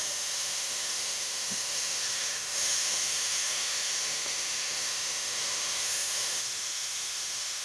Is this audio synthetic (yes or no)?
yes